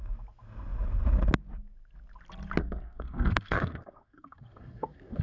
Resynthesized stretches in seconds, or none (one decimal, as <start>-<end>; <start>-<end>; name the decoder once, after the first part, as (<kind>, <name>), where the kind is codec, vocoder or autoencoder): 2.6-5.2 (codec, SNAC)